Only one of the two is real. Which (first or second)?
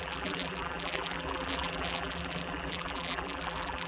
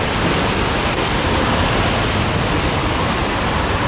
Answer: second